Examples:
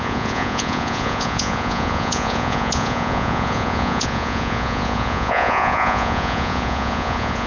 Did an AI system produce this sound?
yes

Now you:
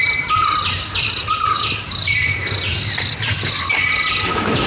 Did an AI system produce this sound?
no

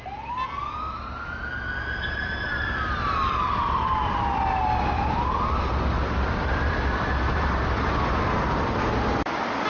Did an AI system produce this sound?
yes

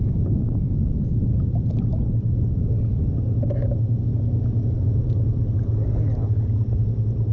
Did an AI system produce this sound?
no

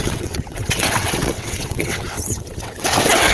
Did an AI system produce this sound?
yes